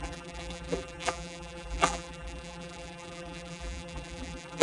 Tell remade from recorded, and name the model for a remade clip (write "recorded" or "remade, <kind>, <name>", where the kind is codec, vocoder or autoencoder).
remade, vocoder, BigVGAN v2